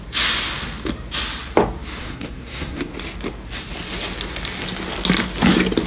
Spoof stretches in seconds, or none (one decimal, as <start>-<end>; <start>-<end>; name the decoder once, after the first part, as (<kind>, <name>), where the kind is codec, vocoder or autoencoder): 2.0-2.9 (codec, SNAC)